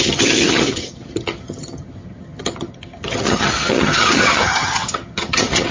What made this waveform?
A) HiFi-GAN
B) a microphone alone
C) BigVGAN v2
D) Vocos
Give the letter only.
A